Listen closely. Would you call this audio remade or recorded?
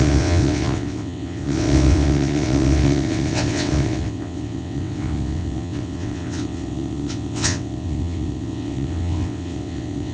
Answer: remade